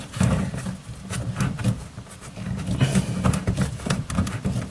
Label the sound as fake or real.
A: real